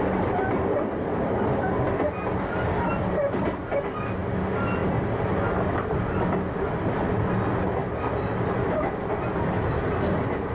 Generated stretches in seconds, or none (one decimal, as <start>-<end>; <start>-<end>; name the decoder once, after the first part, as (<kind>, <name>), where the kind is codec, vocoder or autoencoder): none